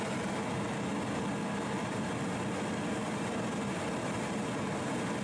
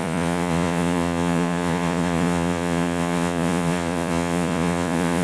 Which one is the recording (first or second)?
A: first